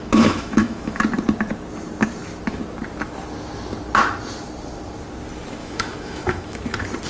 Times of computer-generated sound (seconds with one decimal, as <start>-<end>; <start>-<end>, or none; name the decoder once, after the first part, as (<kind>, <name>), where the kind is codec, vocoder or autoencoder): 0.0-1.0 (autoencoder, DAC-VAE); 5.6-6.6